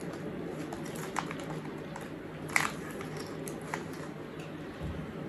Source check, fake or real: real